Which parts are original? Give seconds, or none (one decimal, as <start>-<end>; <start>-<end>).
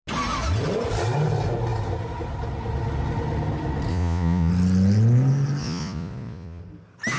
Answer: 0.0-3.9; 4.5-5.6; 6.6-7.2